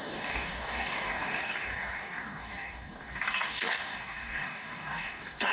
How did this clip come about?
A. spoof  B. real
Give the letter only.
A